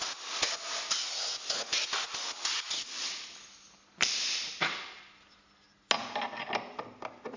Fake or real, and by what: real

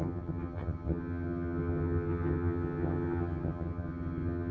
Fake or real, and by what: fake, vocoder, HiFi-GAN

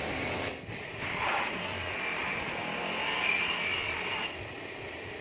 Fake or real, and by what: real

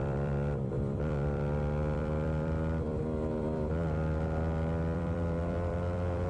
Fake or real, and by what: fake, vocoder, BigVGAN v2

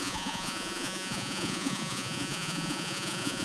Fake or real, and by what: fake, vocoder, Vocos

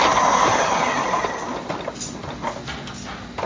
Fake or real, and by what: real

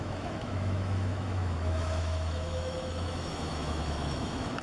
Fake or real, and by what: fake, autoencoder, DAC-VAE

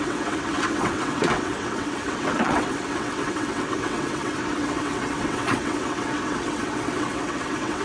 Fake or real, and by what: fake, vocoder, WaveNeXt